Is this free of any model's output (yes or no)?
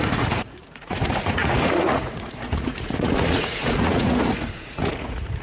no